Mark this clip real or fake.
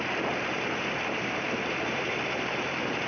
fake